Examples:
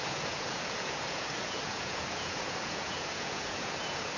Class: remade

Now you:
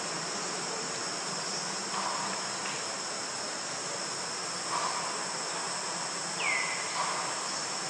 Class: recorded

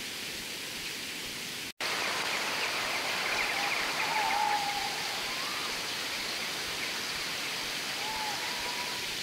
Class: recorded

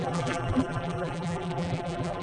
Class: remade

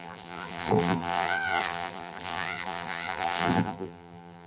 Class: remade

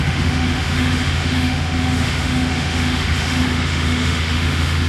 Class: remade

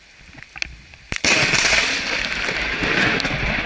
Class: recorded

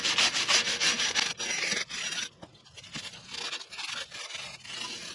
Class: recorded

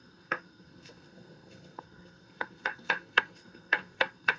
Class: remade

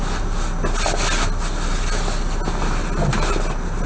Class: recorded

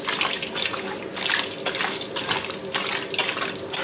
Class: recorded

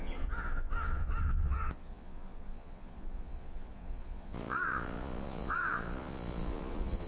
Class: remade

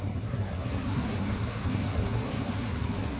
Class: remade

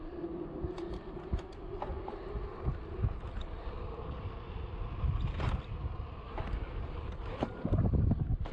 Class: recorded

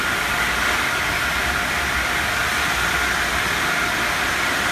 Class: recorded